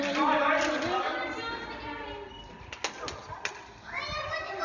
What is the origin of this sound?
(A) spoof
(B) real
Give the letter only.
B